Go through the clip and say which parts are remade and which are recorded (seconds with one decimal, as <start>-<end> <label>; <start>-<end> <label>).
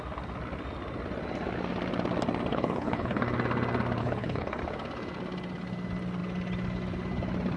0.0-2.5 recorded; 2.5-3.2 remade; 3.2-4.0 recorded; 4.0-4.6 remade; 4.6-7.6 recorded